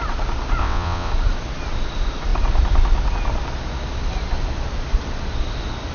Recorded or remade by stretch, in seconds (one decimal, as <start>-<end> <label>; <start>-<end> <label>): 0.0-0.6 recorded; 0.6-1.1 remade; 1.1-5.9 recorded